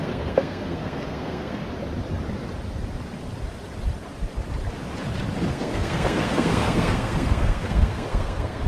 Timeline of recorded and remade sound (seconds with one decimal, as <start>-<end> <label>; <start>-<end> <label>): 0.0-1.6 remade; 1.6-5.5 recorded; 5.5-8.7 remade